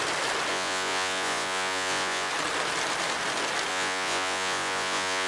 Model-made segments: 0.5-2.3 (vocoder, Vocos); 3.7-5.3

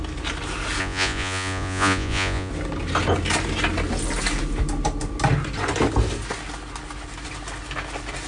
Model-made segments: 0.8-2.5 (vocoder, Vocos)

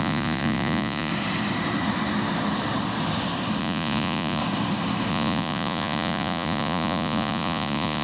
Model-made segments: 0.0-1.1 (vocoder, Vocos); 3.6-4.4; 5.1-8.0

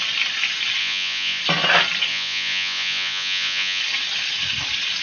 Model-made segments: 0.8-1.4 (vocoder, Vocos); 2.1-3.8

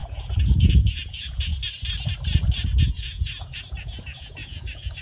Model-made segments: 0.0-1.5 (vocoder, Vocos); 2.8-5.0

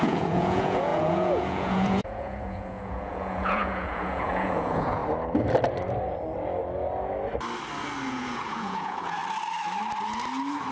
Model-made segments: 0.0-5.0 (vocoder, Vocos); 8.1-9.2